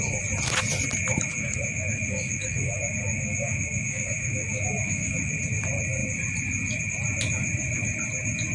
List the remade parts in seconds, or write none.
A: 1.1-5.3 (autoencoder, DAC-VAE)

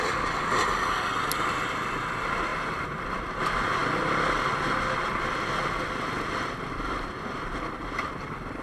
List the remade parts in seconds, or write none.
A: none

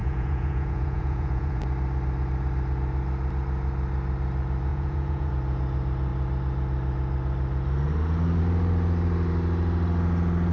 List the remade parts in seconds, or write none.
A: 0.0-1.6 (vocoder, Vocos); 4.7-5.3

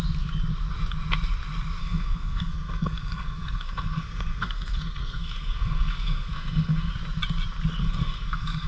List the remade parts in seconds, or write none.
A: 1.8-6.9 (codec, SNAC); 7.8-8.7

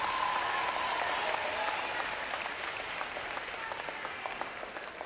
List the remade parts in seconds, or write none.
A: none

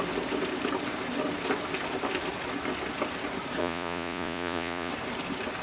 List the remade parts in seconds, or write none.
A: 3.6-4.9 (vocoder, Vocos)

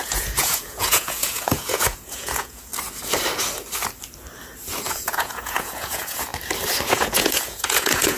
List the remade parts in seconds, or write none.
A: 0.0-2.7 (vocoder, Vocos); 4.8-6.3; 6.9-8.2